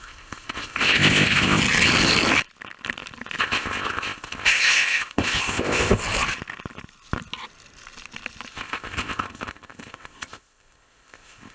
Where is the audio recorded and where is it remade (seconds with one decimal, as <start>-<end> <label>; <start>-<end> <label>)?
0.0-1.6 remade; 1.6-3.4 recorded; 3.4-6.0 remade; 6.0-8.5 recorded; 8.5-11.5 remade